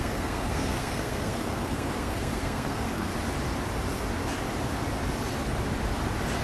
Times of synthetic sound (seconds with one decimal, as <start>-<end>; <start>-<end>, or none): 0.0-3.1